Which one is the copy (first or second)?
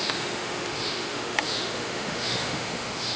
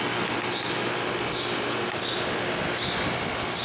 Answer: first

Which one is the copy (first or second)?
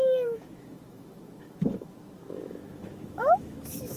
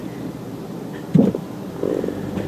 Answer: first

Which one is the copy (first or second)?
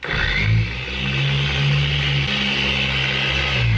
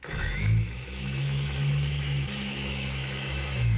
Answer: second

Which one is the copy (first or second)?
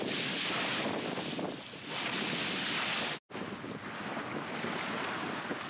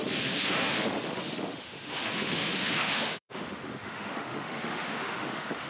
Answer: second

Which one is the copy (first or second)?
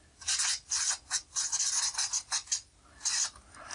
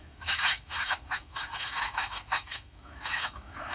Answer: second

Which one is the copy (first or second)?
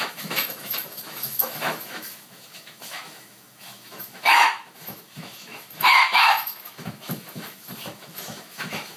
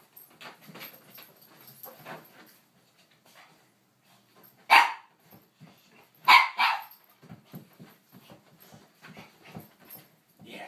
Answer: first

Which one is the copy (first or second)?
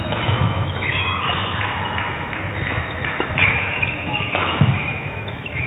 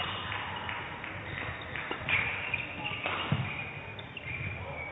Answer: first